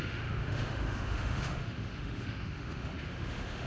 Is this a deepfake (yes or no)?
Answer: yes